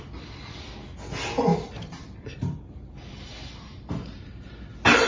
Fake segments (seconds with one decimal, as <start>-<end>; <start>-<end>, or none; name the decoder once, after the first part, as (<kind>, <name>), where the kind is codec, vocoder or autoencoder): 1.5-4.6 (vocoder, BigVGAN v2)